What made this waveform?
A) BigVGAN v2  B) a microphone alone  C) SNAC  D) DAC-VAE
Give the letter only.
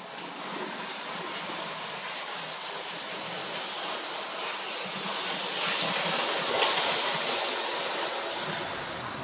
B